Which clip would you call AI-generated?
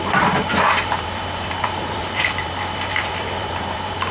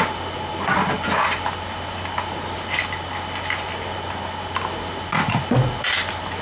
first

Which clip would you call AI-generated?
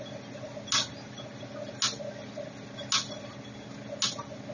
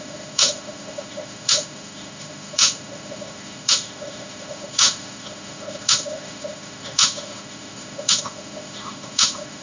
second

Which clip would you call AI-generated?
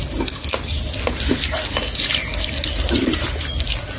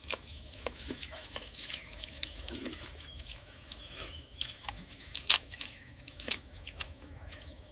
second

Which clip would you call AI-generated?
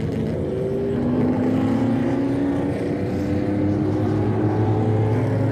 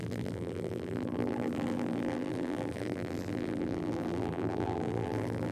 second